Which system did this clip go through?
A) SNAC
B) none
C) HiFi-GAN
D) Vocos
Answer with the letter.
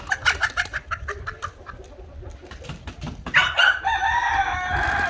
B